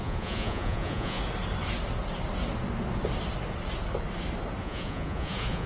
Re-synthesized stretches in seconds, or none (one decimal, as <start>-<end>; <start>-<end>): 0.0-1.2; 4.6-5.7